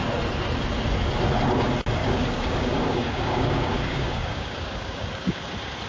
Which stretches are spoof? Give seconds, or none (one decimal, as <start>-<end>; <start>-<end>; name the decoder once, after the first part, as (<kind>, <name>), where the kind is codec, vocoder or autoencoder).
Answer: 2.0-5.5 (codec, DAC)